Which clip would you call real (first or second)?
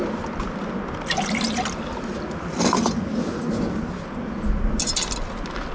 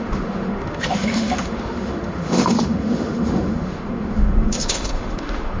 first